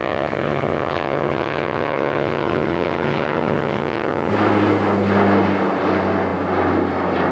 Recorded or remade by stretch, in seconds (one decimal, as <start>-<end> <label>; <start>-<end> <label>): 0.0-4.3 remade; 4.3-7.3 recorded